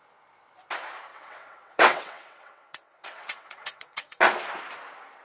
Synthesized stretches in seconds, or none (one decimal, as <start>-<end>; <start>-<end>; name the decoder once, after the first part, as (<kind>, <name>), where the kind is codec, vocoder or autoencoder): 1.1-4.2 (vocoder, WaveNeXt)

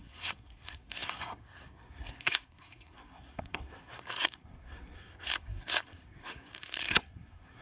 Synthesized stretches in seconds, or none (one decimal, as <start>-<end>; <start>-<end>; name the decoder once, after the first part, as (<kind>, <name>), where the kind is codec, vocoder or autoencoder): 0.0-7.6 (codec, SNAC)

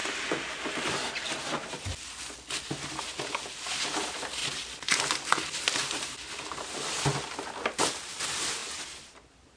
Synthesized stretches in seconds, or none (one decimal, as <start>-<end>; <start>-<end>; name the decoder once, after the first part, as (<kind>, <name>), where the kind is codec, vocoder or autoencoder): none

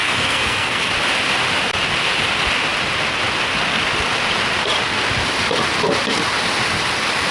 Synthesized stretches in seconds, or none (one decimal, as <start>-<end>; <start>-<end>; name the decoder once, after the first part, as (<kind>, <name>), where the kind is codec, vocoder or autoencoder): 0.0-0.9 (codec, SNAC)

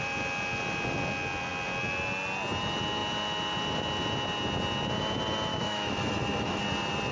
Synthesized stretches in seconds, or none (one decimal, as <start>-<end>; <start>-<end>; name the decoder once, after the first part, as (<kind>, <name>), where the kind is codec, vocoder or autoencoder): 5.5-6.6 (autoencoder, DAC-VAE)

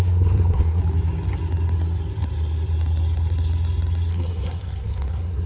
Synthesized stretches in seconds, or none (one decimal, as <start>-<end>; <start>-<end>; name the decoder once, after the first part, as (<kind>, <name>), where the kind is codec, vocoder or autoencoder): 0.0-0.8 (codec, SNAC); 4.1-5.5